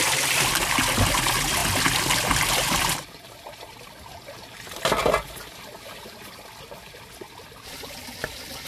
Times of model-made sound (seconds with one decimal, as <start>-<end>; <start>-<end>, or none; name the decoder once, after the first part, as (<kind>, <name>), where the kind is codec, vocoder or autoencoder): none